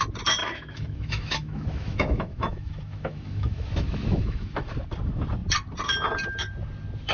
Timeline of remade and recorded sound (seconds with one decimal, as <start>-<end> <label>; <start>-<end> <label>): 0.0-0.4 recorded; 0.4-4.7 remade; 4.7-7.1 recorded